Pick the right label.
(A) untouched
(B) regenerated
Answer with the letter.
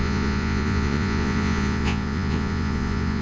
B